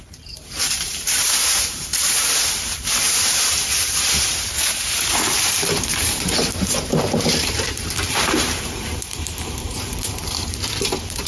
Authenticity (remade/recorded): remade